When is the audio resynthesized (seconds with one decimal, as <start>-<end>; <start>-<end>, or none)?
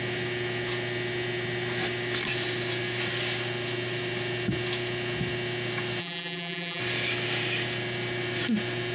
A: 6.0-6.8